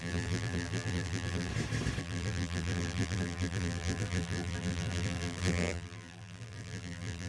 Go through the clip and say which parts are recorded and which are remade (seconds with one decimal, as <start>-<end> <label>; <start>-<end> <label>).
0.0-1.5 remade; 1.5-2.0 recorded; 2.0-7.3 remade